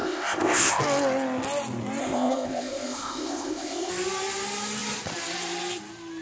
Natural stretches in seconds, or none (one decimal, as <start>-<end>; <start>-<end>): 0.8-2.0; 3.9-6.2